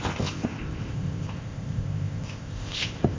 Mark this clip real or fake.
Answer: fake